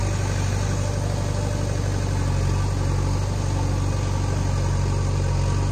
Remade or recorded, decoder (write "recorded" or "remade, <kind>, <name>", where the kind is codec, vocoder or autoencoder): recorded